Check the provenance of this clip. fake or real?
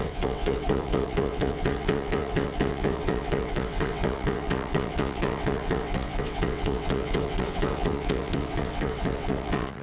fake